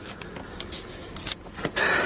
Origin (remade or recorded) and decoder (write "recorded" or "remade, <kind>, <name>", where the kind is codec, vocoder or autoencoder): recorded